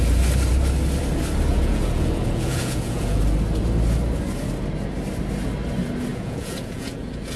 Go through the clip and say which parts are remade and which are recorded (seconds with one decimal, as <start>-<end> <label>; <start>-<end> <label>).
0.0-1.5 recorded; 1.5-3.2 remade; 3.2-6.1 recorded; 6.1-7.4 remade